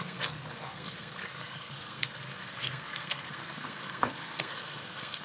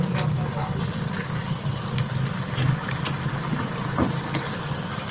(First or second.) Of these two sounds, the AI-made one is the first